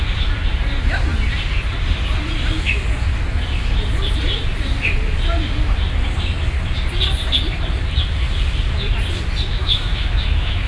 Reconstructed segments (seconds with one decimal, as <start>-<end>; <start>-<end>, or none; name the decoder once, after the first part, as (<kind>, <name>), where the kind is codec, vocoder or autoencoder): 9.5-10.7 (autoencoder, DAC-VAE)